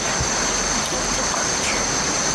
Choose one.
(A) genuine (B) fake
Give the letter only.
A